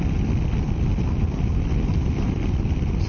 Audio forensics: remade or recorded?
recorded